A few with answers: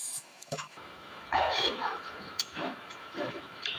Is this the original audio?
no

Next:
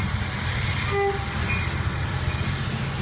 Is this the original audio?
yes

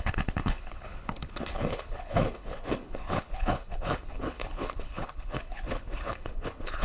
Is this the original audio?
no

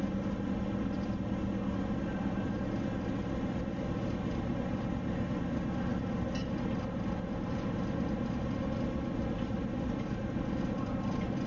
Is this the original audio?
yes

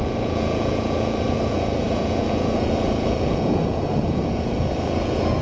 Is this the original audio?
no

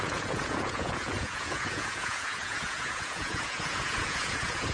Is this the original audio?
no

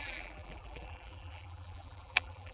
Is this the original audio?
no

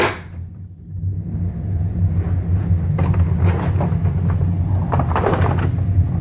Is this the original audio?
yes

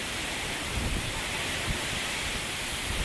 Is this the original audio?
yes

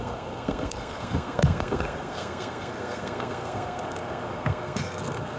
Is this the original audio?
no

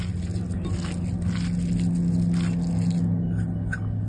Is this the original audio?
yes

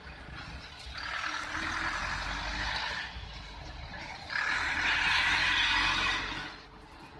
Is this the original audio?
yes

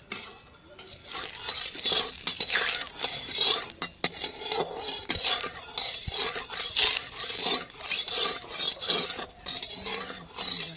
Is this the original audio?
yes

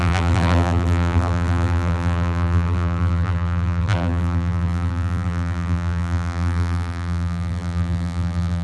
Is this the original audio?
no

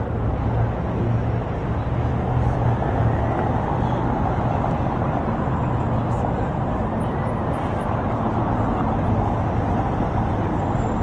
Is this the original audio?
yes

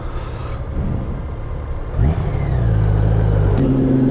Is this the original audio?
yes